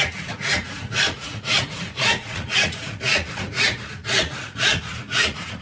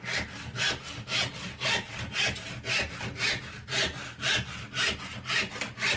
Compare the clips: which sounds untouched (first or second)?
second